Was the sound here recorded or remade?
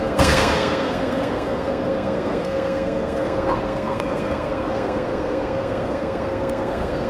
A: remade